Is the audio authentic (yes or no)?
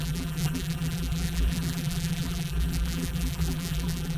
no